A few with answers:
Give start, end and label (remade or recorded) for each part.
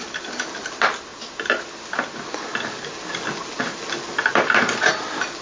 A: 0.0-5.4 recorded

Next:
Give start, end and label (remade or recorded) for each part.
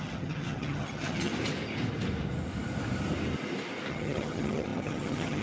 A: 0.0-1.3 remade; 1.3-3.9 recorded; 3.9-5.4 remade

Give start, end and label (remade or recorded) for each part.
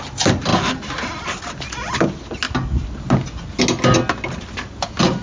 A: 0.0-5.2 recorded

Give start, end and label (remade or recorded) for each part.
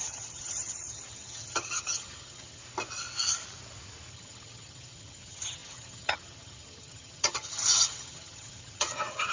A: 0.0-2.6 remade; 2.6-4.1 recorded; 4.1-9.3 remade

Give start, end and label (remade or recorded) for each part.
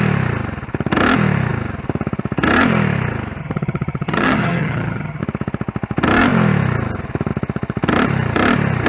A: 0.0-3.4 recorded; 3.4-5.2 remade; 5.2-8.9 recorded